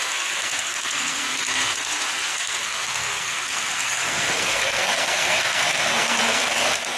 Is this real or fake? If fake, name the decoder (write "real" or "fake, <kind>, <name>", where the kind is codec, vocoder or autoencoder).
fake, codec, SNAC